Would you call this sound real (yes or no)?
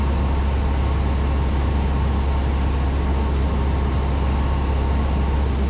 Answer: yes